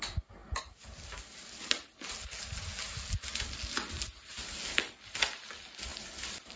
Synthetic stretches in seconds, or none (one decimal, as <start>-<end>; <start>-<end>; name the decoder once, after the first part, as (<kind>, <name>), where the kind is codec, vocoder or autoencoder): none